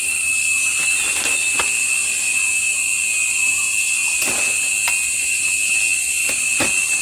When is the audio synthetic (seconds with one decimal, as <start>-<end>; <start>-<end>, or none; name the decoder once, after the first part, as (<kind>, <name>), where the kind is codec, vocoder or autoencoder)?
none